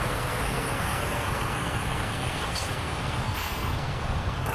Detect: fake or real fake